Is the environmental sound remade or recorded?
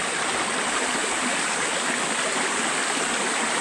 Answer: recorded